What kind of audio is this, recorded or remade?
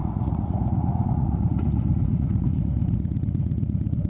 remade